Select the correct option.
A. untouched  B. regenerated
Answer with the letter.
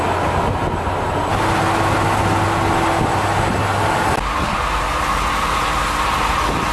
A